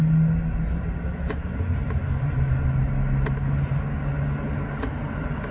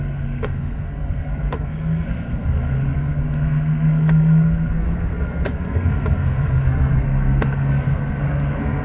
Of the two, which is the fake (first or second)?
second